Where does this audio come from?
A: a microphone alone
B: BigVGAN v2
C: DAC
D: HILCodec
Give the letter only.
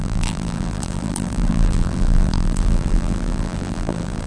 B